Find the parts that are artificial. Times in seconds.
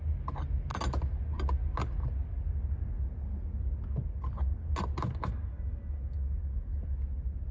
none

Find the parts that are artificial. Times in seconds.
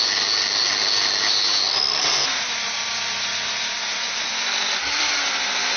none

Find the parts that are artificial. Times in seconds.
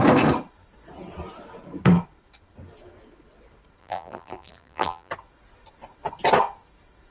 3.8-5.1 (vocoder, BigVGAN v2)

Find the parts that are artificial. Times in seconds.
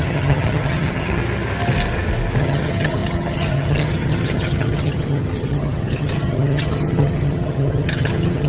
0.0-1.2 (vocoder, HiFi-GAN); 2.4-8.5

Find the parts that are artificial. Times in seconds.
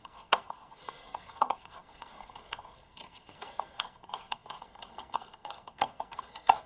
0.0-6.7 (codec, SNAC)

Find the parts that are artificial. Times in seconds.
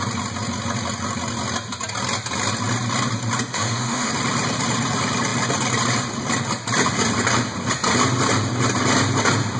3.5-4.1 (autoencoder, DAC-VAE)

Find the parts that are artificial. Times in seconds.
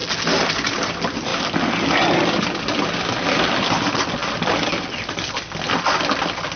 none